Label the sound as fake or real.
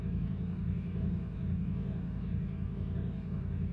fake